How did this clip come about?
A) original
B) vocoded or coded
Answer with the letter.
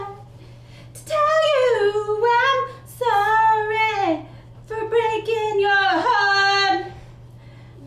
A